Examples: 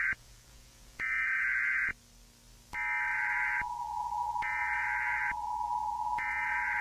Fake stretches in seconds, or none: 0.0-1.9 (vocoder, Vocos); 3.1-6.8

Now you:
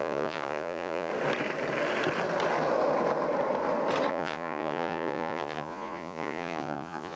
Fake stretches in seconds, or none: 0.0-1.1 (vocoder, Vocos); 4.1-7.2

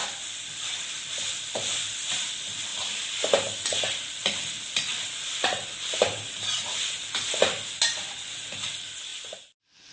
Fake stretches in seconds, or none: none